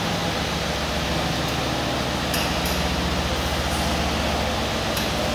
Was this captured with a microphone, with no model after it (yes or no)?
yes